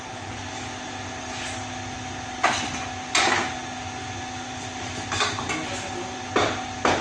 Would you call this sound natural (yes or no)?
yes